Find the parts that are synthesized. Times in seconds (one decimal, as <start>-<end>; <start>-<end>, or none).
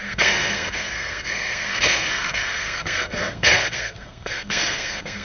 0.0-5.2